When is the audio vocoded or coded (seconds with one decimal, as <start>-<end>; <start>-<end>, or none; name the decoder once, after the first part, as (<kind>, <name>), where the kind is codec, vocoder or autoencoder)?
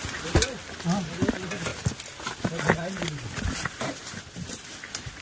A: none